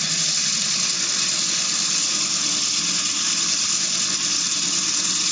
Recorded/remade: recorded